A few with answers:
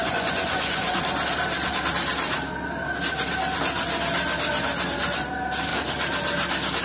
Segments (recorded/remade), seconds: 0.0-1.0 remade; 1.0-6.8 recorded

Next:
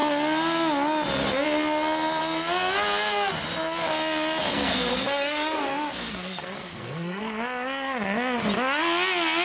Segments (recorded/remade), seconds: 0.0-4.5 recorded; 4.5-7.2 remade; 7.2-9.4 recorded

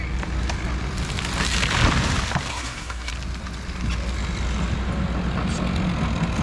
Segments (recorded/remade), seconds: 0.0-2.5 recorded; 2.5-3.1 remade; 3.1-6.4 recorded

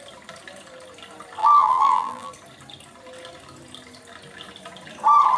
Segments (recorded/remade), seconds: 0.0-1.4 recorded; 1.4-2.3 remade; 2.3-5.4 recorded

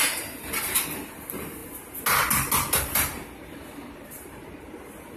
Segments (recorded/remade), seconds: 0.0-5.2 recorded

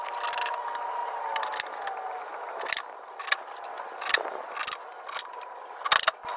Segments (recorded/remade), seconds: 0.0-6.4 recorded